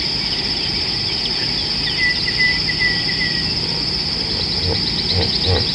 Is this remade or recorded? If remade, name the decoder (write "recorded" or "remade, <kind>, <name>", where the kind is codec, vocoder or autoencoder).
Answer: recorded